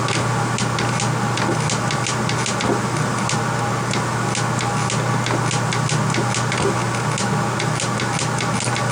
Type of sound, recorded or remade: recorded